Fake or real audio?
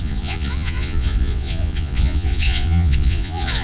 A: fake